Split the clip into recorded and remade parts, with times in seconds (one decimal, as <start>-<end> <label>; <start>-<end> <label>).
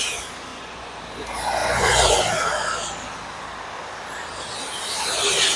0.0-0.5 recorded; 0.5-1.0 remade; 1.0-1.6 recorded; 1.6-2.1 remade; 2.1-5.6 recorded